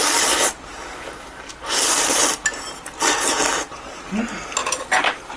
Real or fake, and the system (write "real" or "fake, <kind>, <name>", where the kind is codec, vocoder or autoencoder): real